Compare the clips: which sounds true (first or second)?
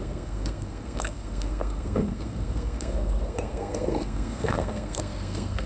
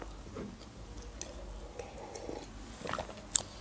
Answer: second